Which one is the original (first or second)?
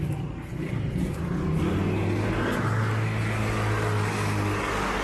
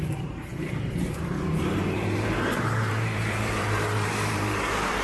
first